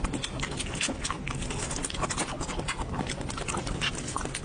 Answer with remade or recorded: recorded